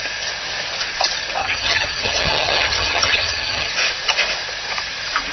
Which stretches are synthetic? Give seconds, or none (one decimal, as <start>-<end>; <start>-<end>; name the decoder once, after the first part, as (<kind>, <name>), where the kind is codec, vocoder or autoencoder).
1.4-3.7 (vocoder, HiFi-GAN)